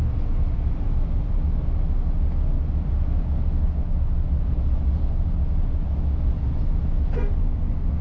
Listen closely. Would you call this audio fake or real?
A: real